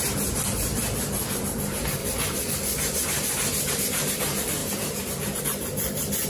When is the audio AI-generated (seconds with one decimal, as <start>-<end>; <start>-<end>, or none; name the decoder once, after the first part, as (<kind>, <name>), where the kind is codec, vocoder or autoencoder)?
0.0-0.7 (vocoder, BigVGAN v2); 1.4-2.0; 3.7-6.3